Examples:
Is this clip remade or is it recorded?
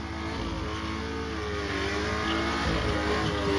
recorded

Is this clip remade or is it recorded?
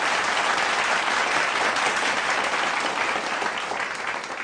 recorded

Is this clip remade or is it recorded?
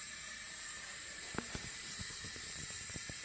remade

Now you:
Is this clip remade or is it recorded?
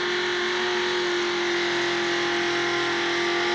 recorded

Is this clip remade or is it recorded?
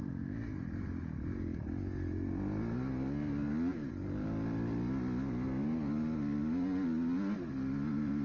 recorded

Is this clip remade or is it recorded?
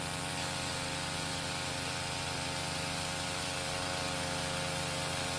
recorded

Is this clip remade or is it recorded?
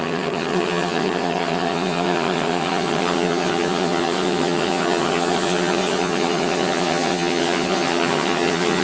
remade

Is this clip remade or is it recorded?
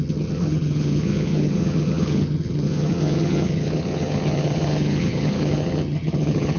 remade